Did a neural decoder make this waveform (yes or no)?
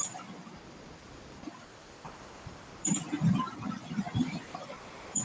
yes